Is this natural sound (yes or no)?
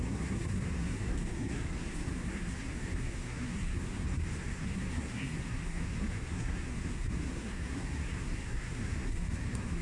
no